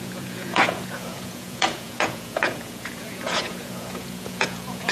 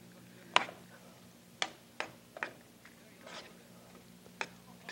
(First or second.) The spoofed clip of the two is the first